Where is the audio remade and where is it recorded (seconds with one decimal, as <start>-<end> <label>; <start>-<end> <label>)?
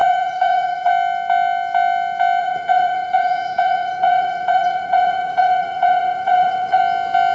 0.0-0.9 remade; 0.9-2.4 recorded; 2.4-6.8 remade; 6.8-7.3 recorded